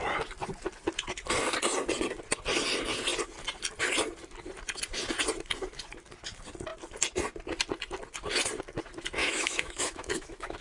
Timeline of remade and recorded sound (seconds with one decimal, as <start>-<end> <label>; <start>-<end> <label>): 0.0-9.2 recorded; 9.2-10.6 remade